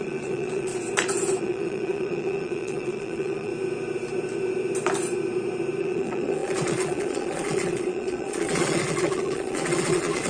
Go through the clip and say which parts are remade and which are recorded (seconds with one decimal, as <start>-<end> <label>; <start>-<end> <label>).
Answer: 0.0-0.7 remade; 0.7-1.4 recorded; 1.4-3.5 remade; 3.5-5.8 recorded; 5.8-10.3 remade